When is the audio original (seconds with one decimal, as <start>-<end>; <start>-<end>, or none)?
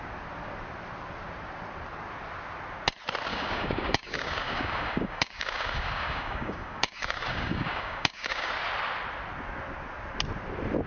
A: 0.0-3.3; 8.5-10.9